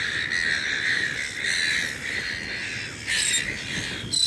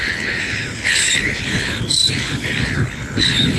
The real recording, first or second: first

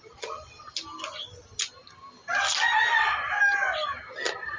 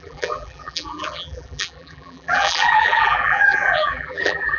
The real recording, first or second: first